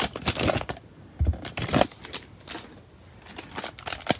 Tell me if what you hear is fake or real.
real